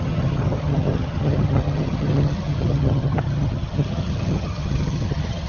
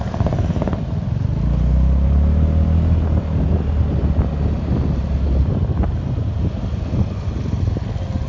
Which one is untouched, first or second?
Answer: second